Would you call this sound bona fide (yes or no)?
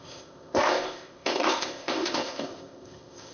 no